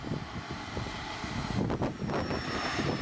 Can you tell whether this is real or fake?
real